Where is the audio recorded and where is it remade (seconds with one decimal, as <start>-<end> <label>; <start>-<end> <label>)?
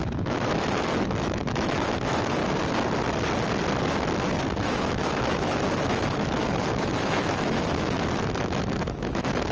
0.0-2.4 remade; 2.4-4.6 recorded; 4.6-9.5 remade